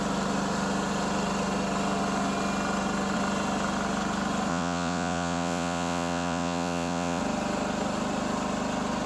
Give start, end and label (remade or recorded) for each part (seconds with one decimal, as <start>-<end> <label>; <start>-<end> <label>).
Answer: 0.0-4.5 recorded; 4.5-7.2 remade; 7.2-9.1 recorded